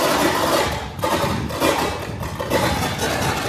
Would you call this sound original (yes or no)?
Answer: yes